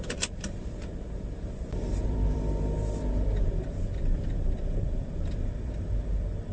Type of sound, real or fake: fake